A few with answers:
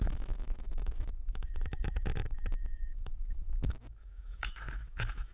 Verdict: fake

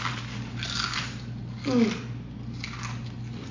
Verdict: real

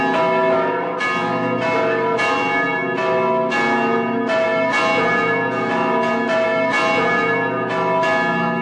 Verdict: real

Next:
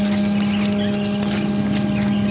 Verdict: real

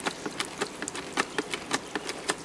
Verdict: real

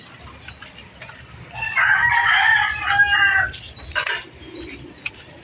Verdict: real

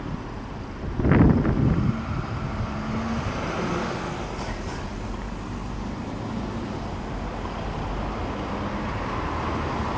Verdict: real